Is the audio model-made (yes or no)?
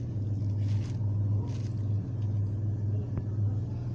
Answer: no